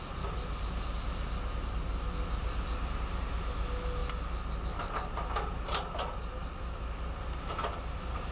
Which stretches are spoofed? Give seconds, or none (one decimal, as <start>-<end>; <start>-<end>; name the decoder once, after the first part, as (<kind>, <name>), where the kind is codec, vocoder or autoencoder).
none